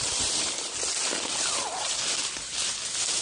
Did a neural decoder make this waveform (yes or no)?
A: no